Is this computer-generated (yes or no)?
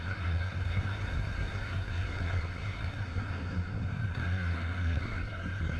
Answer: yes